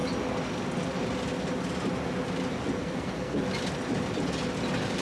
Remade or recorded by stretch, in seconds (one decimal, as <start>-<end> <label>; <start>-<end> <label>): 0.0-2.8 recorded; 2.8-3.4 remade; 3.4-5.0 recorded